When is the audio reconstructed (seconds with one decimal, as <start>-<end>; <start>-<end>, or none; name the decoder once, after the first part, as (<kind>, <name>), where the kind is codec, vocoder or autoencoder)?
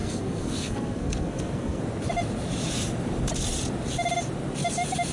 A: 0.0-1.8 (codec, SNAC)